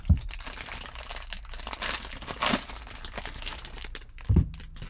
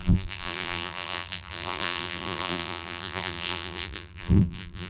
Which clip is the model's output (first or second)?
second